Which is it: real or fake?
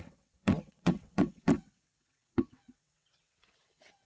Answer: fake